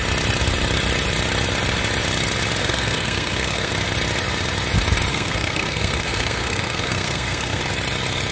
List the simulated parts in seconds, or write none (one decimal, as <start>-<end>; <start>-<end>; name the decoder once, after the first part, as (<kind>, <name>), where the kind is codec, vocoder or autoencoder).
2.6-3.7 (codec, SNAC); 5.1-7.6